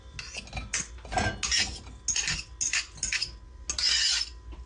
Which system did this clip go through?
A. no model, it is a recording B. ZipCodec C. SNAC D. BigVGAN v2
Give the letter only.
A